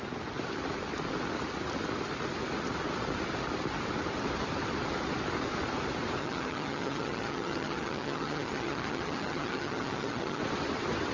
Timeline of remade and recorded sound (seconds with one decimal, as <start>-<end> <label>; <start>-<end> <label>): 0.0-6.2 recorded; 6.2-10.4 remade; 10.4-11.1 recorded

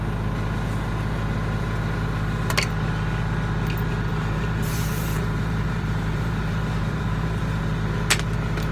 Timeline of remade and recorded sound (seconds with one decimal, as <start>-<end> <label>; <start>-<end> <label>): 0.0-4.1 recorded; 4.1-7.6 remade; 7.6-8.7 recorded

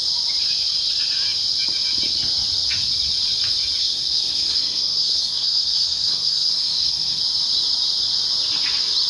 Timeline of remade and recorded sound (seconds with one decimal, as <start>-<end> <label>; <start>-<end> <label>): 0.0-3.8 recorded; 3.8-7.2 remade; 7.2-9.1 recorded